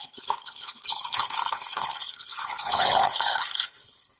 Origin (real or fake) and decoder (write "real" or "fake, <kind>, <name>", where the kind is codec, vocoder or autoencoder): fake, codec, HILCodec